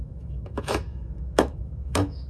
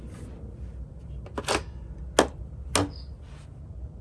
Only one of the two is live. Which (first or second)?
second